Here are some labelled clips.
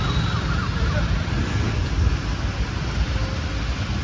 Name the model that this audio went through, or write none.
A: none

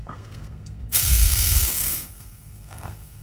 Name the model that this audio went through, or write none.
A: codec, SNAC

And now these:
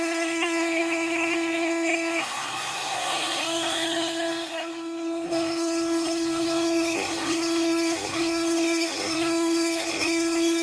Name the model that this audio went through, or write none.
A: codec, SNAC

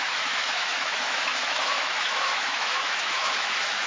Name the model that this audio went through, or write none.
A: autoencoder, DAC-VAE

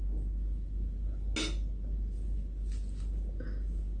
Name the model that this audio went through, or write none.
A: none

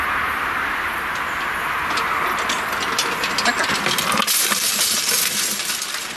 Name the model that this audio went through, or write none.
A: none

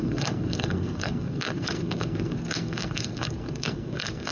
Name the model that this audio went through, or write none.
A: codec, SNAC